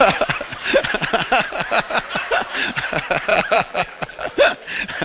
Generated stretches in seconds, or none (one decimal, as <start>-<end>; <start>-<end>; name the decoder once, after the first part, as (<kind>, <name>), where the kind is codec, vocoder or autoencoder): 3.3-4.3 (vocoder, BigVGAN v2)